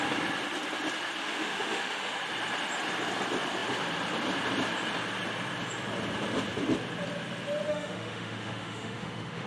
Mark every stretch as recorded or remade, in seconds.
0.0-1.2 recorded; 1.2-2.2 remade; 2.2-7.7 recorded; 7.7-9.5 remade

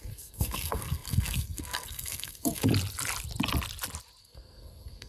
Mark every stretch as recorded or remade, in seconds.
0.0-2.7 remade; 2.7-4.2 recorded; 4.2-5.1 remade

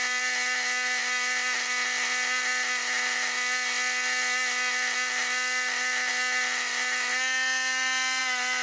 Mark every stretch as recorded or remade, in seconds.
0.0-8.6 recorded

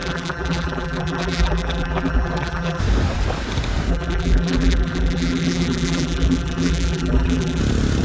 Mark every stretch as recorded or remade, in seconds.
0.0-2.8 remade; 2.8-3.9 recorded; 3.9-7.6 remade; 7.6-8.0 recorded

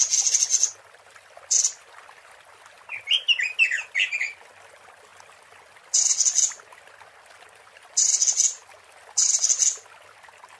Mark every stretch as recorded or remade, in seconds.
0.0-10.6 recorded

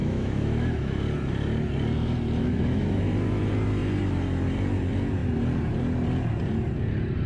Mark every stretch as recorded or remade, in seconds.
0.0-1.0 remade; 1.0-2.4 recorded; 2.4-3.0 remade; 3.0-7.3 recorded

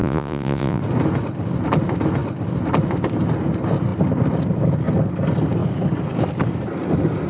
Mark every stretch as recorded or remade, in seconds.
0.0-0.8 remade; 0.8-7.3 recorded